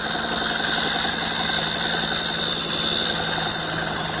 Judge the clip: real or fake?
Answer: real